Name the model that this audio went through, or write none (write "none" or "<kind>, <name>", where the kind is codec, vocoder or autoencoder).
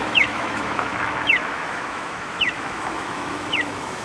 autoencoder, DAC-VAE